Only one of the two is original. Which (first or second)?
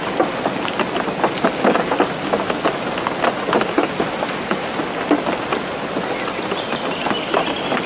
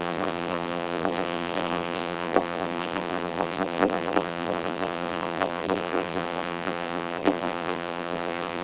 first